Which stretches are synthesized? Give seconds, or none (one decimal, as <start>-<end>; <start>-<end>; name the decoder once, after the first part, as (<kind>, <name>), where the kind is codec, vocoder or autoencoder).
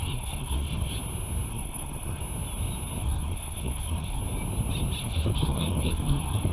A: 0.0-0.9 (codec, SNAC); 1.5-2.2; 3.0-4.2; 5.0-6.5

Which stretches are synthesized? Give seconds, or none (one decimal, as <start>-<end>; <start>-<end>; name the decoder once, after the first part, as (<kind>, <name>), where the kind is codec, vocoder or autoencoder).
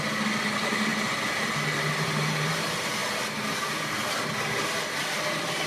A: none